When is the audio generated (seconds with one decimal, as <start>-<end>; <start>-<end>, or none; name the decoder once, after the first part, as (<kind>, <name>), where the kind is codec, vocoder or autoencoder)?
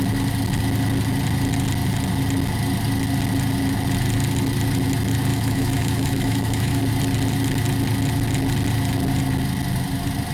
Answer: 5.3-6.8 (autoencoder, DAC-VAE)